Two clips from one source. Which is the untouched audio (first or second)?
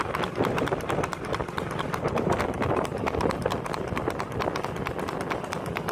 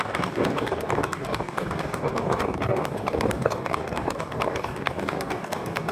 first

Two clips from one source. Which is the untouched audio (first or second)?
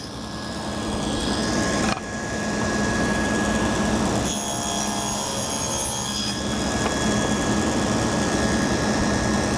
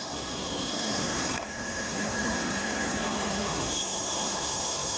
first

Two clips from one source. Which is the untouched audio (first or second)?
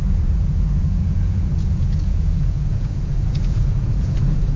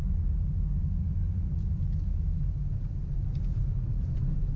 second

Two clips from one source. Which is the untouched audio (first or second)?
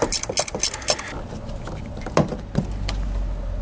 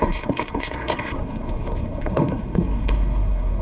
first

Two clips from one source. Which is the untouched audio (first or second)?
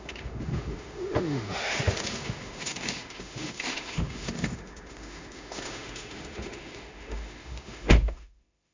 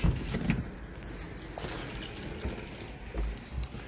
second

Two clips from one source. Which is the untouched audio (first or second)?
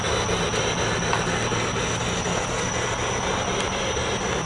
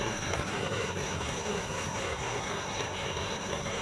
first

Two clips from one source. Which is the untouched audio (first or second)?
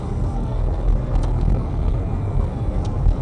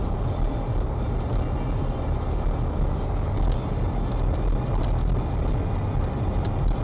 second